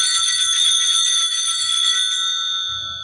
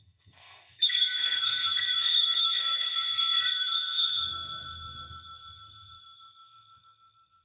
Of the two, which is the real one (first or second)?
first